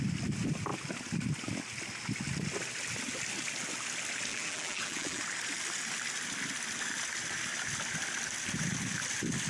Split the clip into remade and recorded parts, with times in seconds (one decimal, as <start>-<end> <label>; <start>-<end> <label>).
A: 0.0-4.3 recorded; 4.3-5.2 remade; 5.2-9.5 recorded